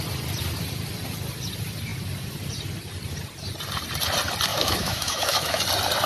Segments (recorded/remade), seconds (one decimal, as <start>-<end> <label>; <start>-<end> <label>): 0.0-4.5 recorded; 4.5-5.6 remade; 5.6-6.1 recorded